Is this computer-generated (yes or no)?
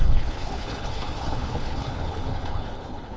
yes